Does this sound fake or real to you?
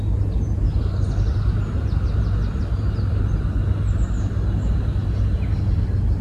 real